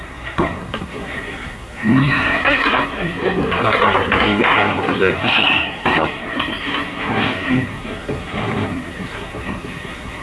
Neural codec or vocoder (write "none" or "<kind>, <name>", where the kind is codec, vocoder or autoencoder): codec, SNAC